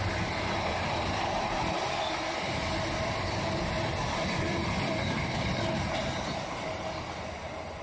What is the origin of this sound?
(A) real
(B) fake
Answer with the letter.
A